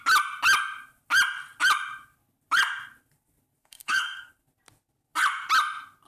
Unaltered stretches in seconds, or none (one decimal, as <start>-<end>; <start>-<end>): 0.0-3.6; 4.3-6.1